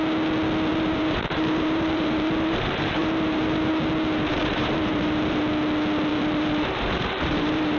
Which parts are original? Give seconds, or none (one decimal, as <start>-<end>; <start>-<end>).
0.0-0.7; 3.7-4.4; 5.4-6.1